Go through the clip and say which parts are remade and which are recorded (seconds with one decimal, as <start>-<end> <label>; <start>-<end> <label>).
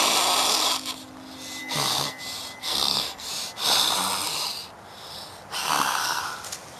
0.0-1.6 recorded; 1.6-2.2 remade; 2.2-2.6 recorded; 2.6-3.3 remade; 3.3-5.6 recorded; 5.6-6.2 remade; 6.2-6.8 recorded